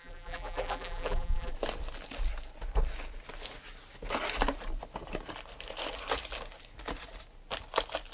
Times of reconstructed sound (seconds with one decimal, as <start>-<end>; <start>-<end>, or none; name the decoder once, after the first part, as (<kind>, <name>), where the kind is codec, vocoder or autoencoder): 0.0-1.5 (vocoder, BigVGAN v2)